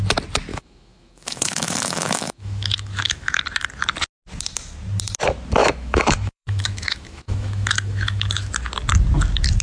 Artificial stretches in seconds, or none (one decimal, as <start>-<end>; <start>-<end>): 0.5-3.4; 5.6-8.5

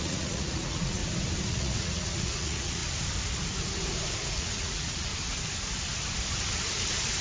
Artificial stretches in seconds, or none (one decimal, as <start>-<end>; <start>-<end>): 0.0-1.0; 1.5-2.8; 4.3-5.1

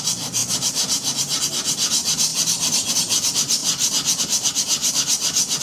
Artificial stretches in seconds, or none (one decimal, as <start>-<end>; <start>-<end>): 0.4-1.4; 2.3-2.9

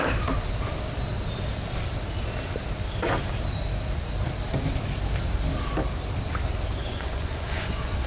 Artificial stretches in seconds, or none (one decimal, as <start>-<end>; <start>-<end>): 6.8-8.1

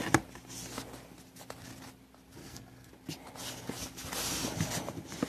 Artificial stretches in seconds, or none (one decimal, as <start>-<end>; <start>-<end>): 2.4-2.9

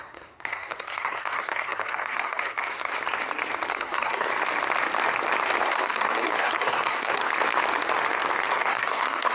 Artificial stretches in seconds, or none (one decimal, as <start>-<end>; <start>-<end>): 0.0-2.9; 3.7-4.3; 5.6-7.2; 8.5-9.3

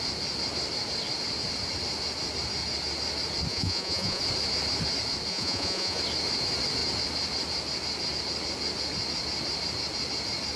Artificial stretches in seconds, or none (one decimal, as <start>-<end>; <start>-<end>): 3.5-4.2; 5.3-6.0